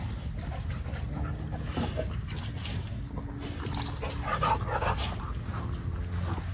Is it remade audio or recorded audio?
recorded